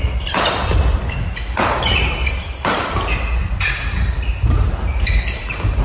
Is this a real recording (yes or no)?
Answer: yes